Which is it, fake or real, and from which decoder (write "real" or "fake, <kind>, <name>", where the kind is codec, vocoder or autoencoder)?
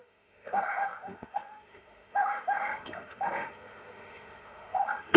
fake, autoencoder, DAC-VAE